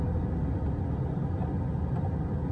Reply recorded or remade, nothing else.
recorded